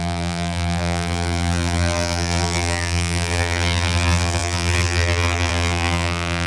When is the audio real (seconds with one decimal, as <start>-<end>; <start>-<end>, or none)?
none